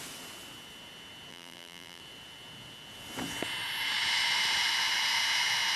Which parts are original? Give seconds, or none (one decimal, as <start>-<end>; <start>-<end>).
0.0-1.3; 2.0-5.8